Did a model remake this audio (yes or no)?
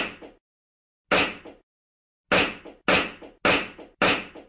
no